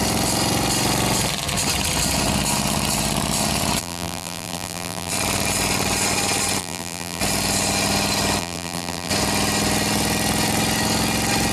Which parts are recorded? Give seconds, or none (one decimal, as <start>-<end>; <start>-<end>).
0.0-3.8; 5.1-6.6; 7.2-8.4; 9.1-11.5